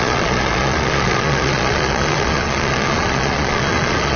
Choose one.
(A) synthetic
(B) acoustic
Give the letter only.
A